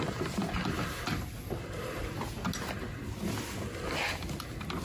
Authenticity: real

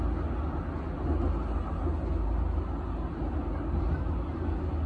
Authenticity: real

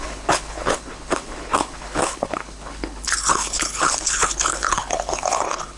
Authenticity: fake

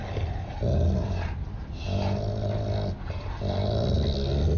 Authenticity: real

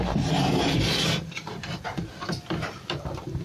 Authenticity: real